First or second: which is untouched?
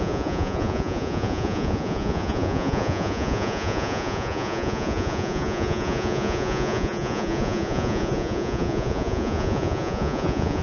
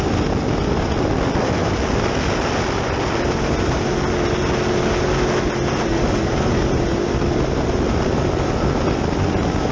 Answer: second